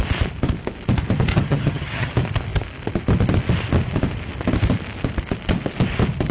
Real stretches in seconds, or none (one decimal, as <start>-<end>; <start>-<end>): 0.0-1.3; 2.1-6.3